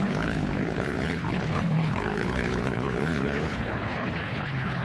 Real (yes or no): no